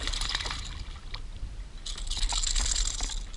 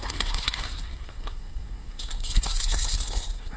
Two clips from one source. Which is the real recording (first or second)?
first